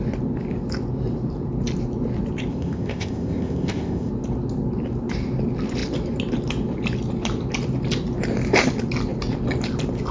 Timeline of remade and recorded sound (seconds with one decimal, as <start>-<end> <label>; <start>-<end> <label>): 0.0-2.5 recorded; 2.5-4.1 remade; 4.1-10.1 recorded